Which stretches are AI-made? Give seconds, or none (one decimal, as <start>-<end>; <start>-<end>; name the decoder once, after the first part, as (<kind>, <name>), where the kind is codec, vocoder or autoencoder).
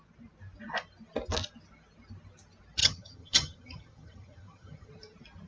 2.8-4.9 (vocoder, HiFi-GAN)